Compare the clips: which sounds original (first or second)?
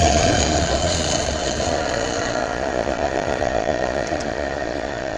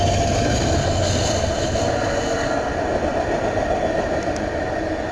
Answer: second